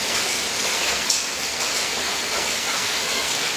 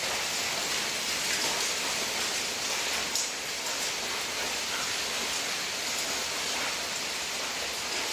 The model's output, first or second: first